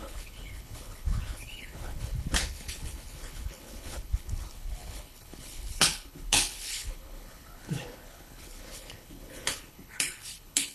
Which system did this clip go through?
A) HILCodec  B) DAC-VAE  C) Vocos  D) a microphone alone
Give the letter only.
A